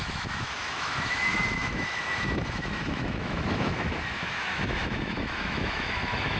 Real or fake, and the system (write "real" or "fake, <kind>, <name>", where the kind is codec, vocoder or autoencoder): fake, autoencoder, DAC-VAE